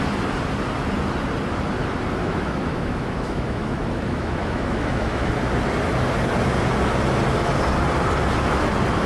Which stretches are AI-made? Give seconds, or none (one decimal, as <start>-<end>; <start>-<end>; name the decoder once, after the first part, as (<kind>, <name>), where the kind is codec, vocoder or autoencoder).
2.2-5.3 (autoencoder, DAC-VAE)